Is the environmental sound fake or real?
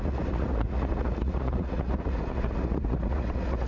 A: fake